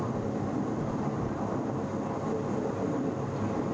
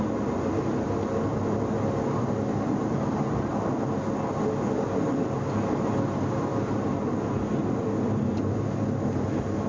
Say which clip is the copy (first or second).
first